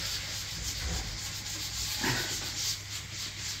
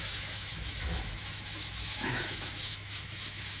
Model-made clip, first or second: second